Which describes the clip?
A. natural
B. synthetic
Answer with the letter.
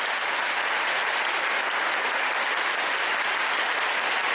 A